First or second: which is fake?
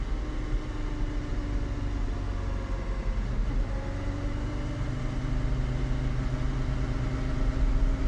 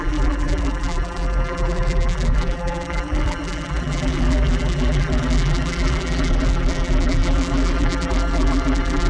second